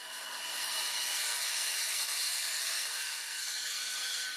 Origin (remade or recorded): remade